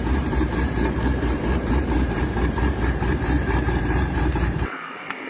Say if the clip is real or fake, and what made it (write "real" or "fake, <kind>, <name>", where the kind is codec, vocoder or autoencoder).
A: fake, vocoder, BigVGAN v2